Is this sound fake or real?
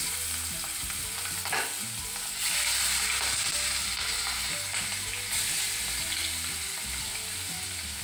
real